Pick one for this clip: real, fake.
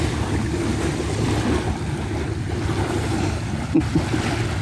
real